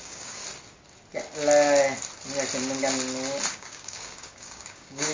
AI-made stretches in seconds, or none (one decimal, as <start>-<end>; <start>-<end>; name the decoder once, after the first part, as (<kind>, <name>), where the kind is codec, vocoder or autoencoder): 0.0-0.4 (codec, DAC); 3.5-5.1